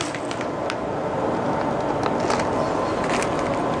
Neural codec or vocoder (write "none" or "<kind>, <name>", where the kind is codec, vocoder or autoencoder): none